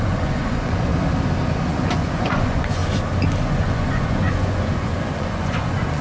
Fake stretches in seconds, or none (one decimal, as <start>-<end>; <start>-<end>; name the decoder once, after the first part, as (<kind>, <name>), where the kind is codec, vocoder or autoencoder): 0.0-0.9 (vocoder, Vocos); 1.7-2.8; 3.4-6.0